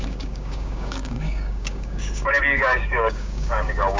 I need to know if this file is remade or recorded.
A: remade